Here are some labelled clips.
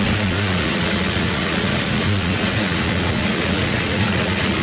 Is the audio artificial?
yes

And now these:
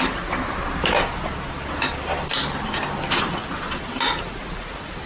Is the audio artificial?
no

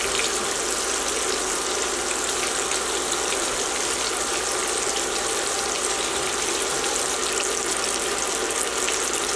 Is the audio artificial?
no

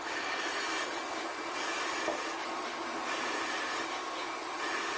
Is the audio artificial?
no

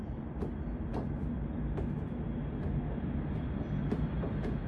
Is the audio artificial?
no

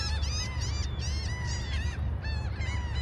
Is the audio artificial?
no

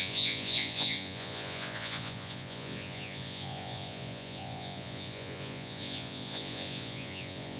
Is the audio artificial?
yes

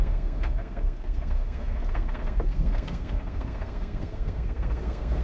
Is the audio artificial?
yes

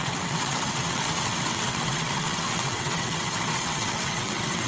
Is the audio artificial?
yes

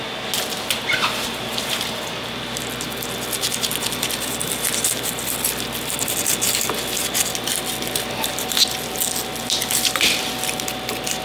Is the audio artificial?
no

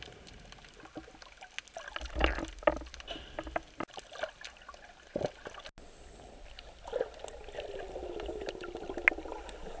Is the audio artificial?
no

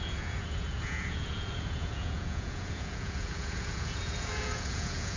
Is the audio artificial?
yes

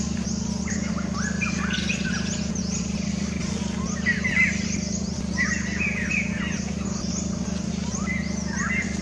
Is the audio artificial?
no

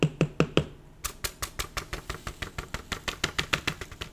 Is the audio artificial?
no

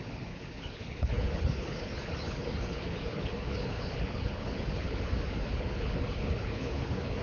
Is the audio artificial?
yes